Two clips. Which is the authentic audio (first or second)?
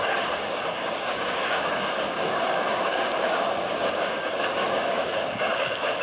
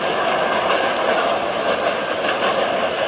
second